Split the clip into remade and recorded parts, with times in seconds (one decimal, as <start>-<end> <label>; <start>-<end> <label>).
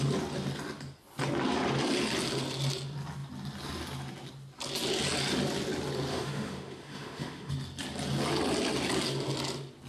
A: 0.0-6.1 recorded; 6.1-7.5 remade; 7.5-9.9 recorded